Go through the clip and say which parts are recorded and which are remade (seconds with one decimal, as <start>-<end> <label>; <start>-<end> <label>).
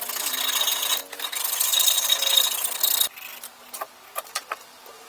0.0-0.7 recorded; 0.7-1.2 remade; 1.2-5.1 recorded